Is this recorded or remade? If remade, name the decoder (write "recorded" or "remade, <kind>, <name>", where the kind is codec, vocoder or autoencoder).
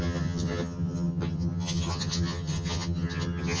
remade, vocoder, HiFi-GAN